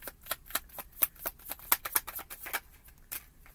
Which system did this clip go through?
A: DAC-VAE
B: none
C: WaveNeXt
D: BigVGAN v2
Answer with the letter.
B